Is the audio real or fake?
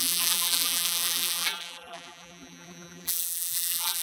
fake